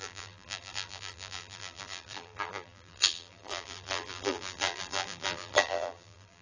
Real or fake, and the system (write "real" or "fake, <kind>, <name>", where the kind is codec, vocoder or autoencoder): fake, vocoder, BigVGAN v2